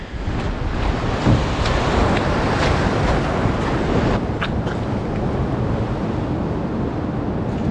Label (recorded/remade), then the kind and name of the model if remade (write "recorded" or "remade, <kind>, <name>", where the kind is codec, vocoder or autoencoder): recorded